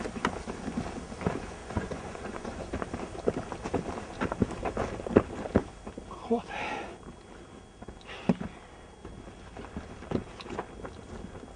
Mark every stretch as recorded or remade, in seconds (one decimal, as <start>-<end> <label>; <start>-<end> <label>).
0.0-1.6 recorded; 1.6-2.7 remade; 2.7-11.6 recorded